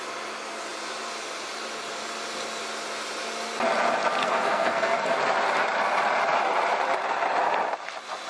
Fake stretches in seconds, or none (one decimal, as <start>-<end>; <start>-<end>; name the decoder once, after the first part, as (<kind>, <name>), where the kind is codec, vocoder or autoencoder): 4.2-5.1 (codec, SNAC)